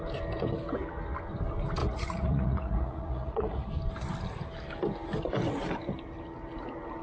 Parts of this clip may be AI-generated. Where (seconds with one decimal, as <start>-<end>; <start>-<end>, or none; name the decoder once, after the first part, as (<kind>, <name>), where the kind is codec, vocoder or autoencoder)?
1.8-3.7 (vocoder, Vocos)